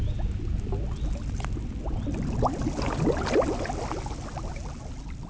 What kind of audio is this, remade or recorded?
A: recorded